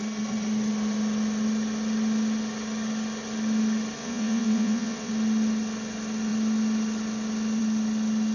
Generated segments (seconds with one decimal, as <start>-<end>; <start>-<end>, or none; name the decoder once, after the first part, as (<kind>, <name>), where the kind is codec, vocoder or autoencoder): 4.0-5.1 (vocoder, WaveNeXt)